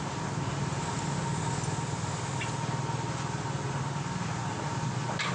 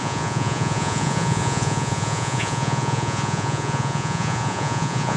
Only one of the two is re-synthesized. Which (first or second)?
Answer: second